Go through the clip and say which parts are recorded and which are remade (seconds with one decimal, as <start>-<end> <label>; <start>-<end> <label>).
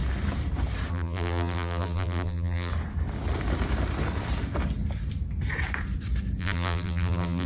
0.0-0.9 recorded; 0.9-2.7 remade; 2.7-6.4 recorded; 6.4-7.5 remade